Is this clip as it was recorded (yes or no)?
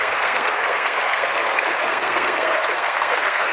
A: no